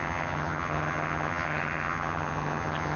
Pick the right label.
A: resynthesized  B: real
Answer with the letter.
A